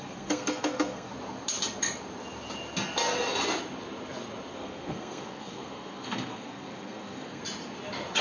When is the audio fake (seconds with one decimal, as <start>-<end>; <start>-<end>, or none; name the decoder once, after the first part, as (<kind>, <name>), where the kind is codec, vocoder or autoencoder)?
0.0-1.1 (codec, SNAC); 4.5-7.4